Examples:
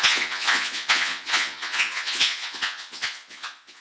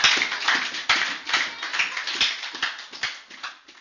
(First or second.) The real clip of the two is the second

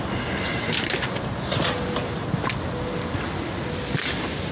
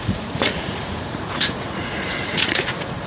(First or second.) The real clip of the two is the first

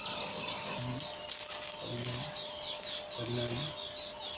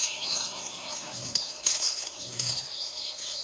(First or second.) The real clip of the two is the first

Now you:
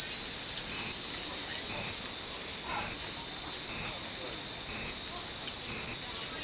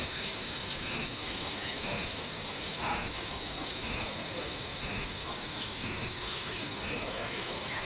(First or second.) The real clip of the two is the first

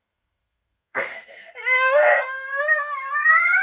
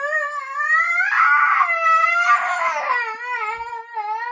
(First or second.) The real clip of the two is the second